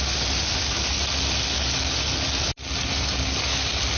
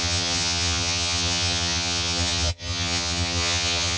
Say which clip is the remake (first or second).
second